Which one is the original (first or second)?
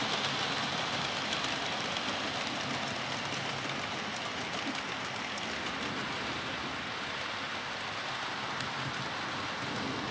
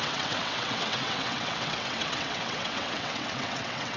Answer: first